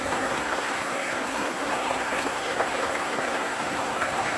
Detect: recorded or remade remade